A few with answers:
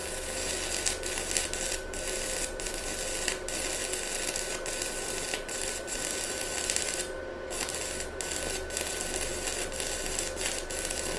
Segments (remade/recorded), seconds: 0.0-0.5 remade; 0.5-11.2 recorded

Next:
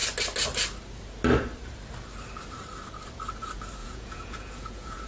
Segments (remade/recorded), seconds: 0.0-3.8 recorded; 3.8-5.1 remade

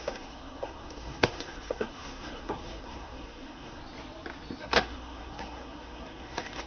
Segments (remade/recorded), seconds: 0.0-3.8 remade; 3.8-4.6 recorded; 4.6-6.7 remade